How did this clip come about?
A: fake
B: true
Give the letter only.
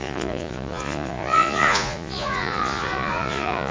A